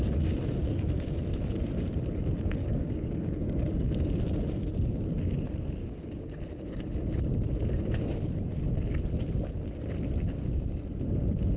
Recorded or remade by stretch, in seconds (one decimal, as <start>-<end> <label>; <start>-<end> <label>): 0.0-2.6 recorded; 2.6-3.7 remade; 3.7-5.8 recorded; 5.8-6.4 remade; 6.4-11.6 recorded